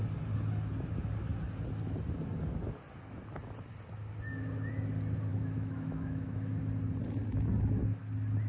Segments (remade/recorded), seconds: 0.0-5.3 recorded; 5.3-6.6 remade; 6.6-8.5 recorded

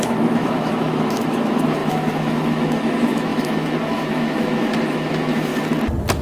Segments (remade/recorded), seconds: 0.0-5.5 remade; 5.5-6.2 recorded